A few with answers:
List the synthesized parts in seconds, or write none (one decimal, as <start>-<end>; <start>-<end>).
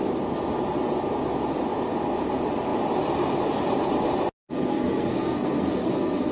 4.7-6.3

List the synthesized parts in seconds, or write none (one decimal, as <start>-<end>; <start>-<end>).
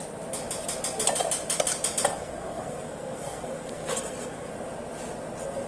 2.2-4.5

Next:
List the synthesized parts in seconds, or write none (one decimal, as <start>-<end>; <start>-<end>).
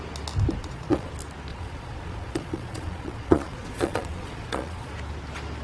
0.6-1.1; 1.5-4.9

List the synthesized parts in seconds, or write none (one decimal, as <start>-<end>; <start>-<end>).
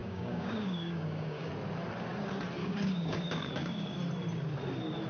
0.0-1.5; 2.6-4.0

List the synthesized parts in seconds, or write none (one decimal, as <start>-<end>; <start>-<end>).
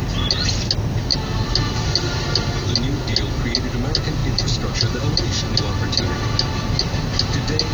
4.2-5.0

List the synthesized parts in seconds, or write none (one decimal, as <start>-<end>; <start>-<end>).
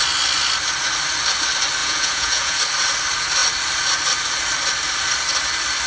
1.8-2.6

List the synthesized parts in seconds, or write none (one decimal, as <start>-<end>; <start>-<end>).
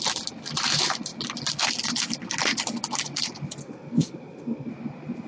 3.6-4.7